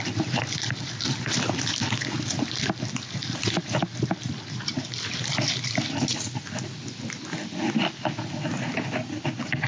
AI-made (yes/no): no